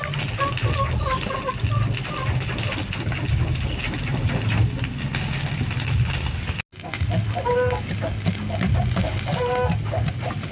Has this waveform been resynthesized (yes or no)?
no